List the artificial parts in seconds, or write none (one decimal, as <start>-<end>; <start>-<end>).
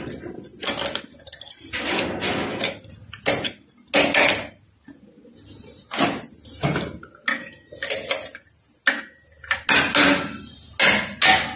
none